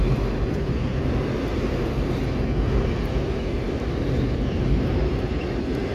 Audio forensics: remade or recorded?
recorded